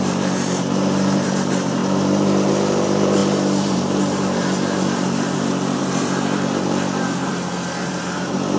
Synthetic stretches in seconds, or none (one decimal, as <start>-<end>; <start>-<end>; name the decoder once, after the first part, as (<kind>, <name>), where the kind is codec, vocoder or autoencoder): 0.0-8.6 (vocoder, BigVGAN v2)